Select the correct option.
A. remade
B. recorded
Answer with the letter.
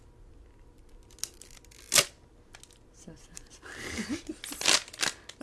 B